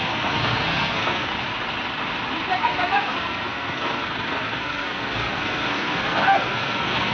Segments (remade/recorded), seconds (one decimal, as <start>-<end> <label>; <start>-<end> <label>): 0.0-1.3 remade; 1.3-2.6 recorded; 2.6-7.1 remade